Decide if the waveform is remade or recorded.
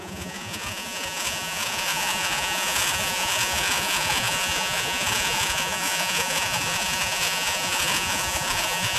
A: remade